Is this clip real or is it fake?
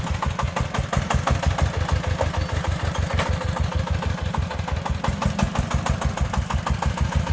real